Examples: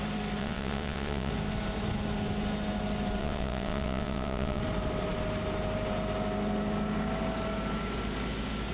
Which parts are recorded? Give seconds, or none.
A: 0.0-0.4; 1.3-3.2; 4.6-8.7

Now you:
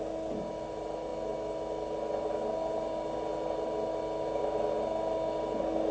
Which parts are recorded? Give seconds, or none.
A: 0.0-5.9

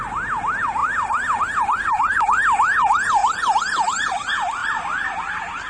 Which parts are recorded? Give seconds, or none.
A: 0.0-5.7